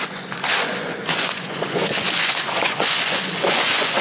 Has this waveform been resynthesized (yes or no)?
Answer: yes